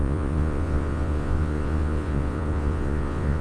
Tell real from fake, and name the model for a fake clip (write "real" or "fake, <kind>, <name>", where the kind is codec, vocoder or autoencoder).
fake, vocoder, Vocos